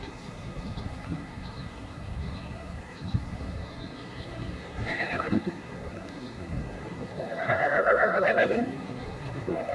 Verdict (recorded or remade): remade